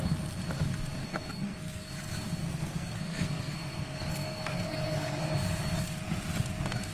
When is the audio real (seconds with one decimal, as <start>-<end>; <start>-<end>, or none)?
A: 0.0-1.0; 1.9-2.4; 5.2-6.9